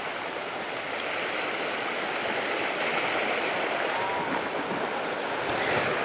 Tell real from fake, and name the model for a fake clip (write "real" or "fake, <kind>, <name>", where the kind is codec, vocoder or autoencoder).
real